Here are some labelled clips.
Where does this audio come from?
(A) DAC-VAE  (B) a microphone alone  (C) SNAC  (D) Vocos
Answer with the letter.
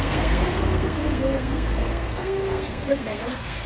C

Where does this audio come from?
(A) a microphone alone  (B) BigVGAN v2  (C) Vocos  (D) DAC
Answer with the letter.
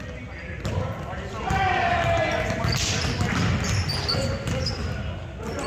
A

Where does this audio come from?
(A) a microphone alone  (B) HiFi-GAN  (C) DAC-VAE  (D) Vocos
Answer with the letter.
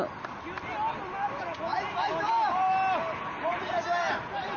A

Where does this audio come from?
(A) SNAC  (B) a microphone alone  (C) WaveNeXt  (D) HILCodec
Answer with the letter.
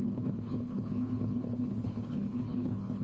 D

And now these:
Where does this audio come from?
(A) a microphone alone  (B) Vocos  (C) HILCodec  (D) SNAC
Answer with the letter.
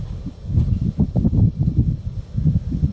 A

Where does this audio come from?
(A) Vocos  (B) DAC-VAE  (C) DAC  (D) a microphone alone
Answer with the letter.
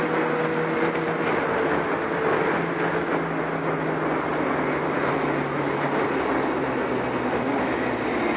D